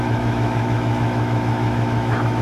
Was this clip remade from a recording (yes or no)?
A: yes